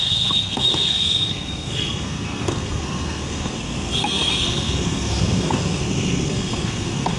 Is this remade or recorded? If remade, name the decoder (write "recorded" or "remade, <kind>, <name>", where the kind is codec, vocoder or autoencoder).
remade, codec, SNAC